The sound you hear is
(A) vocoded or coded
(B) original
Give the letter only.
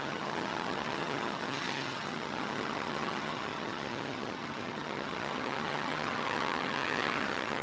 A